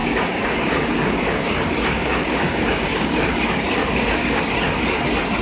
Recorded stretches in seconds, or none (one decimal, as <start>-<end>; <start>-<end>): 3.2-3.8; 4.4-5.4

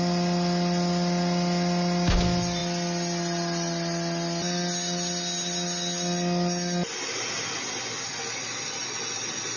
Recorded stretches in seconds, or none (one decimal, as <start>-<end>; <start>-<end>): 0.0-9.6